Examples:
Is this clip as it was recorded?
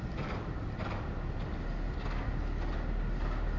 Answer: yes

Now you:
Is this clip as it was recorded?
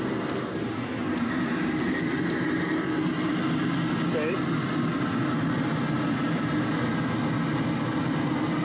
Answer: yes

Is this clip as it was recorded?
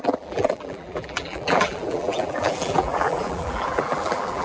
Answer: no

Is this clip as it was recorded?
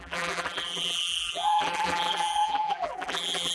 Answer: no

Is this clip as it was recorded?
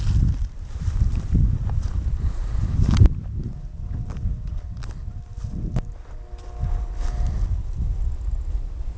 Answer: no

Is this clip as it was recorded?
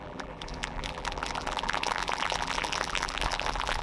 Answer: no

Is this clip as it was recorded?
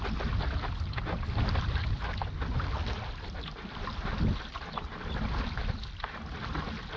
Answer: yes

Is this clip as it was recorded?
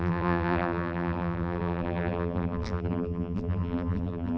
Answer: no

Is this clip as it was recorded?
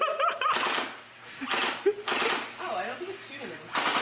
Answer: yes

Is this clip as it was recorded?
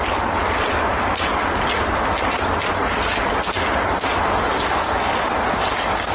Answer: yes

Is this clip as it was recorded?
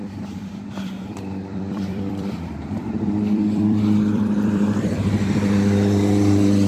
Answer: no